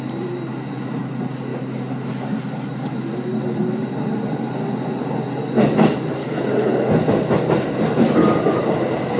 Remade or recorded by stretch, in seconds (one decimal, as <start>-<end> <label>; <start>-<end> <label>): 0.0-6.2 recorded; 6.2-6.7 remade; 6.7-9.2 recorded